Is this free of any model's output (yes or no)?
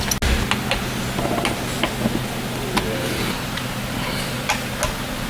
yes